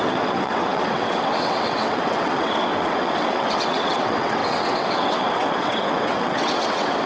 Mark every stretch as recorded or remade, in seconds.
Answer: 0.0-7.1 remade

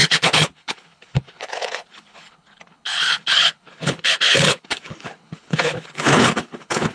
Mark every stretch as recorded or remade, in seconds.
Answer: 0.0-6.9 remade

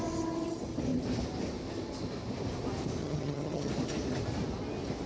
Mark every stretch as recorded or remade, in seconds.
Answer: 0.0-3.0 recorded; 3.0-3.7 remade; 3.7-5.1 recorded

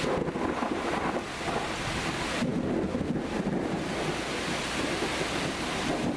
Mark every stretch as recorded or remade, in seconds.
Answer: 0.0-6.2 recorded

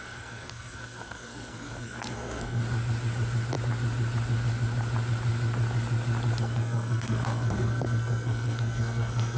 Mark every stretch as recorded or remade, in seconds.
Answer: 0.0-2.6 remade; 2.6-6.4 recorded; 6.4-9.4 remade

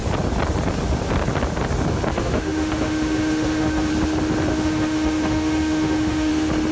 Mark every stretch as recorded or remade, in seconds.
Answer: 0.0-2.1 recorded; 2.1-3.9 remade; 3.9-4.5 recorded; 4.5-6.3 remade; 6.3-6.7 recorded